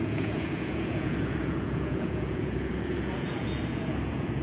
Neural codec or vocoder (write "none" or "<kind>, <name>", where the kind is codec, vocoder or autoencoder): vocoder, Vocos